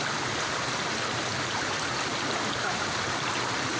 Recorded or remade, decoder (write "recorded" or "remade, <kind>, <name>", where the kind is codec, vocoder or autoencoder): recorded